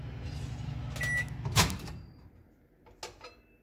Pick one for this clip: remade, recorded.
recorded